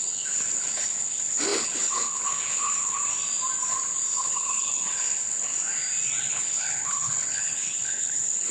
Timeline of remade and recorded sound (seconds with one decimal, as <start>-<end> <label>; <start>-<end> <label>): 0.0-3.0 remade; 3.0-4.1 recorded; 4.1-5.5 remade; 5.5-6.2 recorded; 6.2-8.5 remade